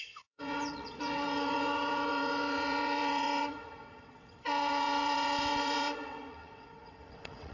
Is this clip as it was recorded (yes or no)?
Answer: no